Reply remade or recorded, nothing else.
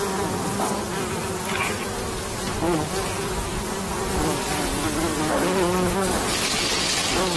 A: recorded